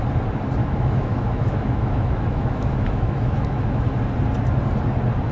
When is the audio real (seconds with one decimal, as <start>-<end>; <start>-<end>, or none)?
0.0-0.6; 3.8-5.3